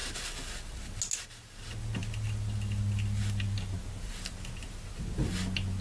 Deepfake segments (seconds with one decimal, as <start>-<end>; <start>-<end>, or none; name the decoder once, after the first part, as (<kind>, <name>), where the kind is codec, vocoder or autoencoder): none